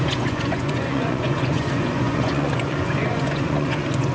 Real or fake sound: fake